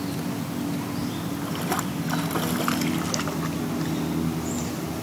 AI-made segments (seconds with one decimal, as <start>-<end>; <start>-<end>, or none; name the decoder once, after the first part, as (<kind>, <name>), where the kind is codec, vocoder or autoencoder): none